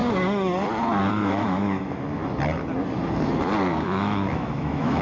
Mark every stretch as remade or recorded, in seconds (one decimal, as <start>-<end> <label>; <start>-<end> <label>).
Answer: 0.0-1.1 recorded; 1.1-2.2 remade; 2.2-3.8 recorded; 3.8-5.0 remade

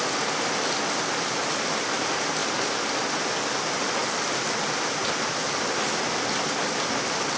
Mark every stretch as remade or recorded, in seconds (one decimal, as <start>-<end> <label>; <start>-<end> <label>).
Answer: 0.0-7.4 recorded

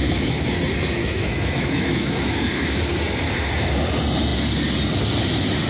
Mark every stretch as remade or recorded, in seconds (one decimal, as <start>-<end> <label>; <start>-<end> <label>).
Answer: 0.0-0.5 remade; 0.5-1.0 recorded; 1.0-2.8 remade; 2.8-5.7 recorded

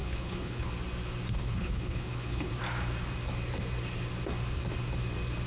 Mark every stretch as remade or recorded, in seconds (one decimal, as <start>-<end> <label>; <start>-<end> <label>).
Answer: 0.0-0.7 remade; 0.7-1.4 recorded; 1.4-2.5 remade; 2.5-5.5 recorded

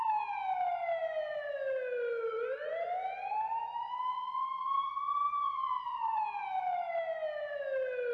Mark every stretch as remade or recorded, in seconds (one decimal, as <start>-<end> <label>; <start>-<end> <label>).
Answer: 0.0-4.1 recorded; 4.1-6.2 remade; 6.2-8.1 recorded

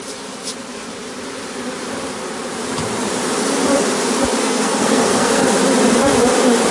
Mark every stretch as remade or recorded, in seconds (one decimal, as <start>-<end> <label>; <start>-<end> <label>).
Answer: 0.0-4.4 recorded; 4.4-5.5 remade; 5.5-6.7 recorded

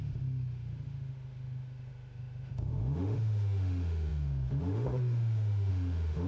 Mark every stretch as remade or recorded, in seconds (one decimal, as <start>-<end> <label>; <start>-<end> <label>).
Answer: 0.0-6.3 remade

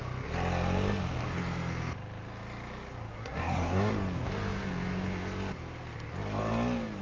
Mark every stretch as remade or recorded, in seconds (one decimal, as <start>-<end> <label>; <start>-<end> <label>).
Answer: 0.0-3.1 recorded; 3.1-3.9 remade; 3.9-7.0 recorded